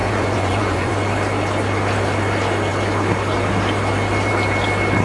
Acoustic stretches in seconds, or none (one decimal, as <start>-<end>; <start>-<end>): 0.9-5.0